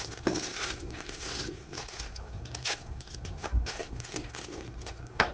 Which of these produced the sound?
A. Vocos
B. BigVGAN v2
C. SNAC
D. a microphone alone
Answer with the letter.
C